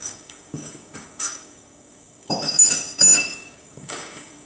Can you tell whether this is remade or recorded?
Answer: remade